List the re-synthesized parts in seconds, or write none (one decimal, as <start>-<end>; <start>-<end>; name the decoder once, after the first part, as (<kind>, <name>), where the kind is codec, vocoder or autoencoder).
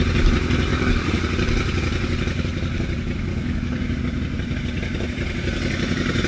0.7-1.2 (codec, DAC); 3.3-4.0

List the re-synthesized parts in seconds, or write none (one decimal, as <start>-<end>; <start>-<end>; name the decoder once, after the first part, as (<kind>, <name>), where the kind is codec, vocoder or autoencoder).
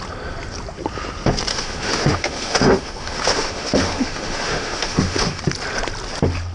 1.5-5.4 (autoencoder, DAC-VAE)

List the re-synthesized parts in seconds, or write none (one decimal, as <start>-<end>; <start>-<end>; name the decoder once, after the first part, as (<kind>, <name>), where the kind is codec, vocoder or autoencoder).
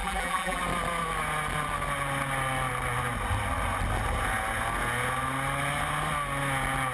0.0-0.6 (vocoder, BigVGAN v2)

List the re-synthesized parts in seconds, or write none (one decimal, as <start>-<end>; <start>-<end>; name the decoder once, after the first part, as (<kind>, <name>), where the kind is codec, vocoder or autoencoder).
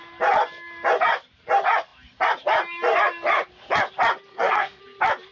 4.3-4.8 (codec, SNAC)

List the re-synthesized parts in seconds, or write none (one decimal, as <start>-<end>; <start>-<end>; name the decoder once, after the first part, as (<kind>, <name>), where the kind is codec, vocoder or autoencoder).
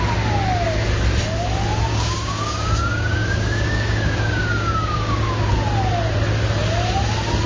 1.9-5.5 (codec, DAC)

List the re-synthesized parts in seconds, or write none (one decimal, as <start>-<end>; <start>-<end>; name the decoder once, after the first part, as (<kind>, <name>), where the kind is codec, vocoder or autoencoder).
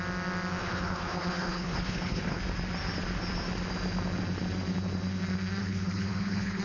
0.6-2.4 (codec, HILCodec); 5.6-6.6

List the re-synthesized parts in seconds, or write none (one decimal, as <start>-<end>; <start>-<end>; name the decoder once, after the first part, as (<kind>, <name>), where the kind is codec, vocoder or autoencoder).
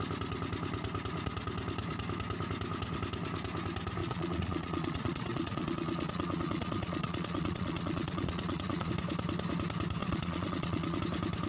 4.0-8.9 (vocoder, Vocos); 10.0-11.0